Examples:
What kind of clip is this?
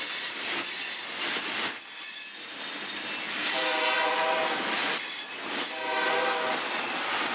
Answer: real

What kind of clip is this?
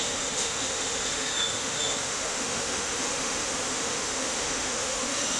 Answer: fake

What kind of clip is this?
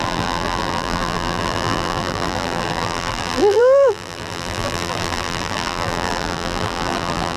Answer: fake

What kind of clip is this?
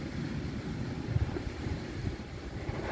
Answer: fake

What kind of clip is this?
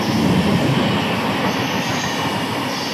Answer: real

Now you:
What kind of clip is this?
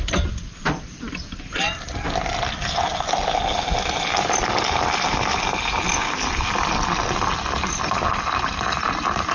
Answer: real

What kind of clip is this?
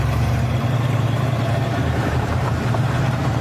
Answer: fake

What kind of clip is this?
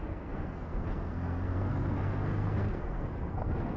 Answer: fake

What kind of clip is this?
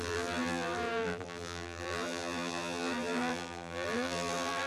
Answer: fake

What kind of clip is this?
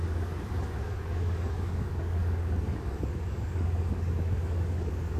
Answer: fake